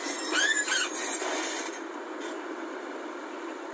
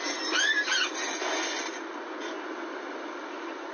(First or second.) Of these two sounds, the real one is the second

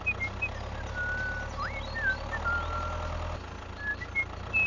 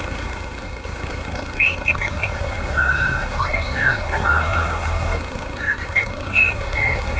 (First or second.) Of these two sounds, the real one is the first